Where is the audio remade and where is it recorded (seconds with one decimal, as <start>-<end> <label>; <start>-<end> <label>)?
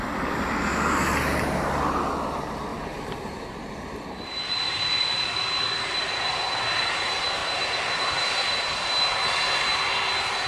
0.0-2.7 recorded; 2.7-5.0 remade; 5.0-10.5 recorded